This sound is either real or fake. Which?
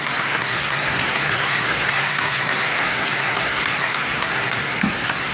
fake